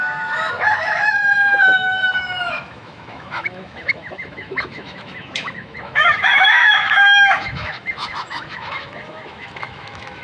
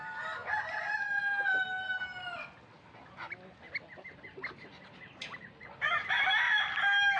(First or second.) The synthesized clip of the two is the first